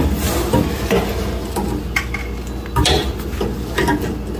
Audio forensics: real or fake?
real